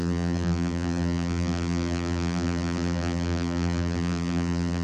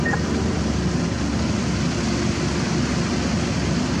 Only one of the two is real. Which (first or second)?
second